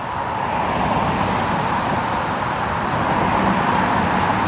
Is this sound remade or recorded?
recorded